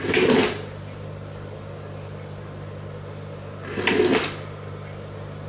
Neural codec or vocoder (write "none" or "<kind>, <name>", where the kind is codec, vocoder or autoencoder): none